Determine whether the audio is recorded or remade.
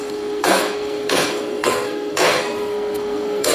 remade